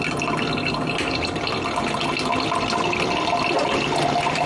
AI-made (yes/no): no